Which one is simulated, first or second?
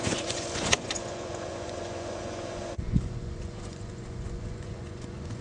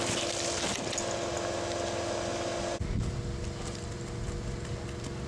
first